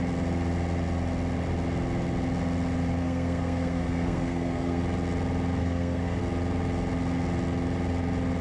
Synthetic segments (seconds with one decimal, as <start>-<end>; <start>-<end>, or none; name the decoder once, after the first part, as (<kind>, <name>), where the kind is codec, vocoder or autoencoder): 3.0-4.8 (codec, SNAC); 5.6-6.2

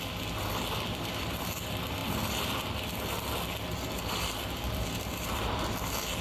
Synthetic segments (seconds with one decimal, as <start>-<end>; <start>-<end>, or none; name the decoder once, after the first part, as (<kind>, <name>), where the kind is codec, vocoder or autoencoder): none